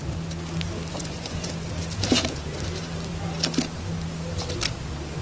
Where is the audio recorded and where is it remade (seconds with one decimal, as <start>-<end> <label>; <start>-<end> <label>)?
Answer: 0.0-0.9 recorded; 0.9-1.5 remade; 1.5-5.2 recorded